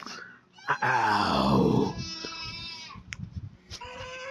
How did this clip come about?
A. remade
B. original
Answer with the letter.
B